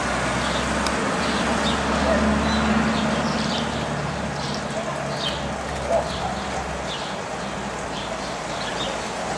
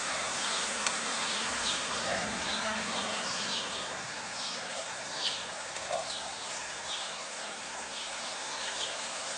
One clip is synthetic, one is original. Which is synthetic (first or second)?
second